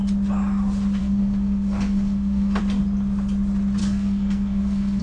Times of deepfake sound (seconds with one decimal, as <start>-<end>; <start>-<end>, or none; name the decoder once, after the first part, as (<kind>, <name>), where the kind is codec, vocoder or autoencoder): 1.0-2.6 (codec, SNAC); 3.8-5.0